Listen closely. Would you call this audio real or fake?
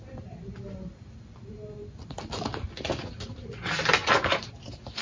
real